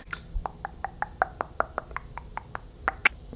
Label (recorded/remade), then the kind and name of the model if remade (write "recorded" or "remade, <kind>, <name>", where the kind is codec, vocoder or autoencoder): recorded